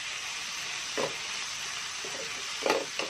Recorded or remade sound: recorded